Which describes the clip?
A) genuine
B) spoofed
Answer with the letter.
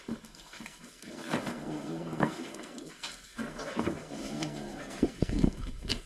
B